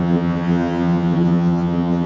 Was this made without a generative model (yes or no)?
no